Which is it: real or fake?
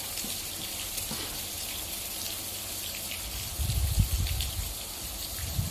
real